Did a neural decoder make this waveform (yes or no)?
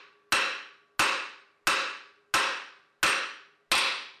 no